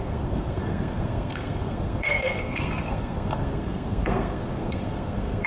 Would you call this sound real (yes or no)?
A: no